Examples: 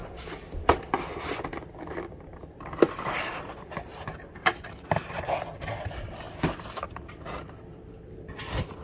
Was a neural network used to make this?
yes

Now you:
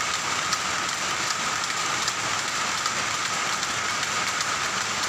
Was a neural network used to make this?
no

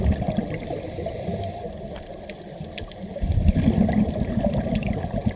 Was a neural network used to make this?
yes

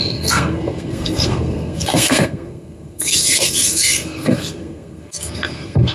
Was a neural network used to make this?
yes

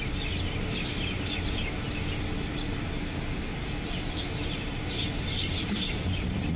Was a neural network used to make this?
no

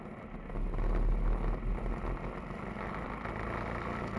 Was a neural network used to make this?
no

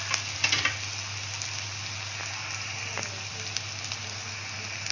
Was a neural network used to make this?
no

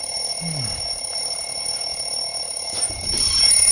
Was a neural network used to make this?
yes